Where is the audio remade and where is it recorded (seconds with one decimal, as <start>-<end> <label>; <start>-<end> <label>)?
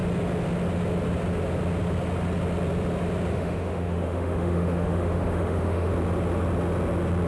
0.0-3.3 recorded; 3.3-5.9 remade; 5.9-7.3 recorded